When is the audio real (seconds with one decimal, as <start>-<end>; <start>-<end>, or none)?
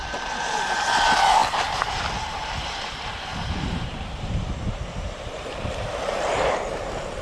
none